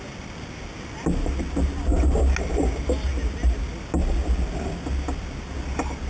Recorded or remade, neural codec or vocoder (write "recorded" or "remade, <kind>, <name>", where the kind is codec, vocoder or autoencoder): recorded